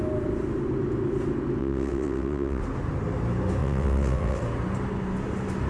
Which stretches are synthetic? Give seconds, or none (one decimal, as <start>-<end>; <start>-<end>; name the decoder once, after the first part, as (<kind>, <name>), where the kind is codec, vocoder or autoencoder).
1.6-2.6 (vocoder, WaveNeXt); 3.6-4.4